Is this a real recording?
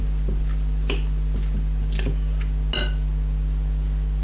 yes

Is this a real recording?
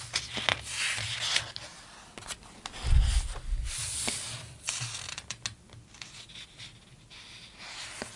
yes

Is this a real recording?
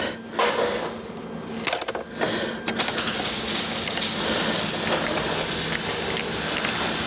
yes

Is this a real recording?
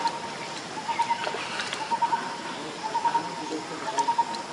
yes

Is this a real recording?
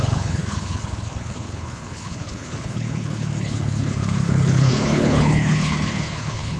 no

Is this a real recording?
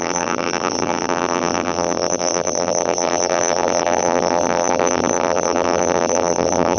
no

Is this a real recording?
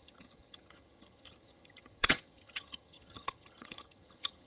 no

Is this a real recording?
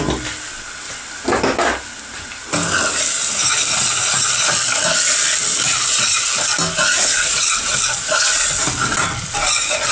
yes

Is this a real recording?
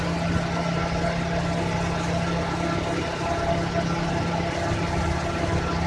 yes